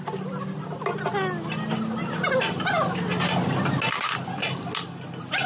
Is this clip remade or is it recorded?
recorded